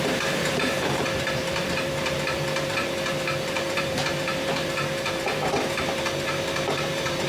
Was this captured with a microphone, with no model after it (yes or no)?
no